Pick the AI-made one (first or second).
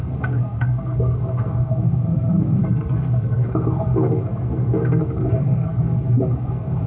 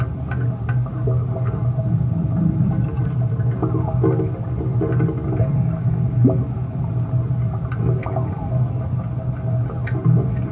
first